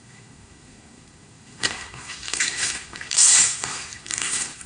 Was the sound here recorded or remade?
remade